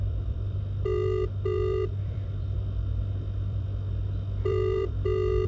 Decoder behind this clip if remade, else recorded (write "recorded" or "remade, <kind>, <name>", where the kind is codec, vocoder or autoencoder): remade, vocoder, BigVGAN v2